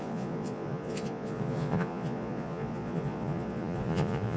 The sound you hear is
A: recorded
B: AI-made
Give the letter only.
B